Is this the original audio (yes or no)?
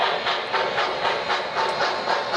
yes